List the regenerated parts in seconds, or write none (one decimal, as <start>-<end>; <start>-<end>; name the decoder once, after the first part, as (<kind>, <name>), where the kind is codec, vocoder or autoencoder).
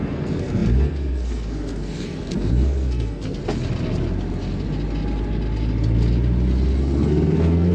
0.0-3.4 (codec, SNAC); 6.8-7.7